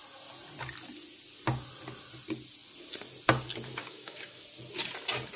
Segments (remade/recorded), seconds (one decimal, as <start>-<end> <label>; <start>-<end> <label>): 0.0-3.8 recorded; 3.8-4.4 remade; 4.4-5.4 recorded